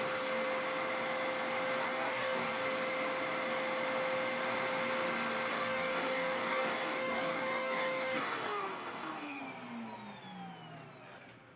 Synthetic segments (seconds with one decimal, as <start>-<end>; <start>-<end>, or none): 1.8-2.5; 5.5-9.4